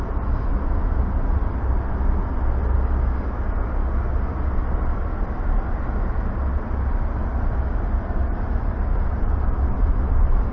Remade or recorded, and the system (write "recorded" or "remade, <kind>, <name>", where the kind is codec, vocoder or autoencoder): recorded